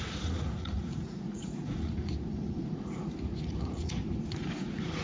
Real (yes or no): no